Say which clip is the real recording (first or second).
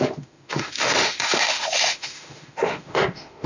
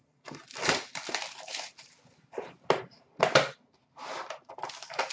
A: second